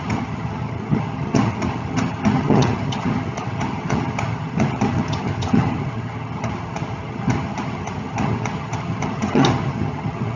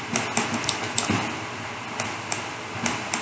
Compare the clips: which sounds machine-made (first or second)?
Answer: first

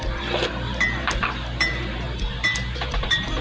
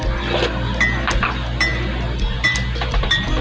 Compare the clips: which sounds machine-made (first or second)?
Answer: first